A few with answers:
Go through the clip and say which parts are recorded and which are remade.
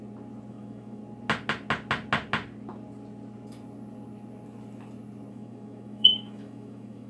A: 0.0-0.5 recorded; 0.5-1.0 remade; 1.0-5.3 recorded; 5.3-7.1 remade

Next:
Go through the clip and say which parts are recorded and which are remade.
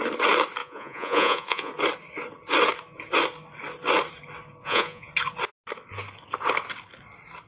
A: 0.0-0.6 recorded; 0.6-1.7 remade; 1.7-4.6 recorded; 4.6-5.1 remade; 5.1-7.5 recorded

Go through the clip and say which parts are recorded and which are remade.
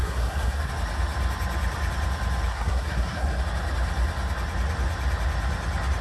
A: 0.0-0.7 remade; 0.7-2.5 recorded; 2.5-3.4 remade; 3.4-6.0 recorded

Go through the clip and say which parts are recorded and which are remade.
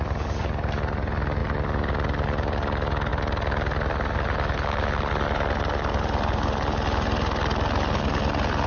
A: 0.0-8.7 recorded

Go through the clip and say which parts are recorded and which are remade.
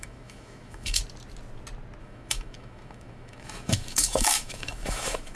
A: 0.0-1.0 remade; 1.0-2.0 recorded; 2.0-5.4 remade